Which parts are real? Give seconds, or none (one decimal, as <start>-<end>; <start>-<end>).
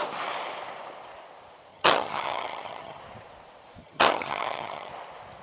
0.0-1.7; 3.0-3.8; 4.9-5.4